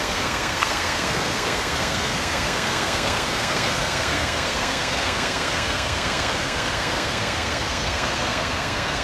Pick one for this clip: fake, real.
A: fake